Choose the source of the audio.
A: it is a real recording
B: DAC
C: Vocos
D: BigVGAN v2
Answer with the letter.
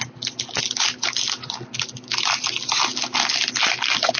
A